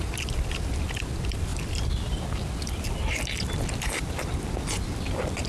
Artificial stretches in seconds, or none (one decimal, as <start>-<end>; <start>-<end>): none